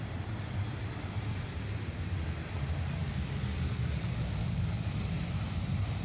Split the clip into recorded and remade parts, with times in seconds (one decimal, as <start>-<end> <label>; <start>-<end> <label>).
0.0-3.0 recorded; 3.0-4.7 remade; 4.7-6.0 recorded